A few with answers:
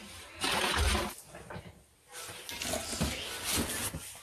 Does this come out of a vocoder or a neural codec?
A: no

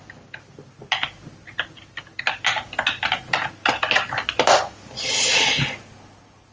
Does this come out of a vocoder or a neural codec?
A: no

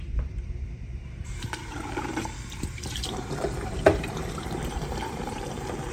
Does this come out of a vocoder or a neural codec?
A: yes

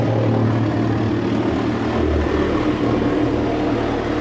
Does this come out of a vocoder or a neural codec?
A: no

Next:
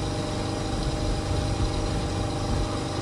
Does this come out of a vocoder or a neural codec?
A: no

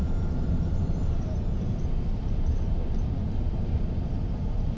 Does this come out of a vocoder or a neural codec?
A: yes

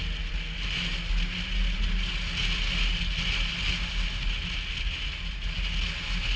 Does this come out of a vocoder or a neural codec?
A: no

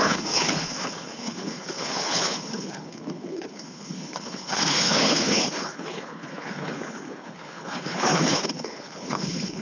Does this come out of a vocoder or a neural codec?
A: yes